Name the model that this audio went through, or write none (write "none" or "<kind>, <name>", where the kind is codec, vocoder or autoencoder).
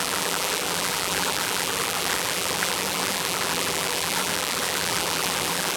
vocoder, BigVGAN v2